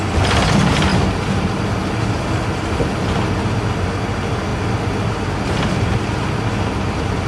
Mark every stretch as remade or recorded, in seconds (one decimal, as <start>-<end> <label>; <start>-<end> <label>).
0.0-7.3 recorded